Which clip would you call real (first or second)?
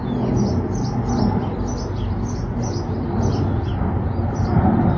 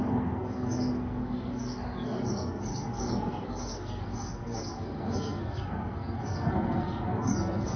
first